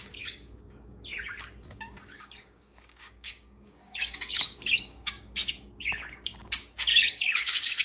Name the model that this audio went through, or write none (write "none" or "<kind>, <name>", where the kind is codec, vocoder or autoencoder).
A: codec, DAC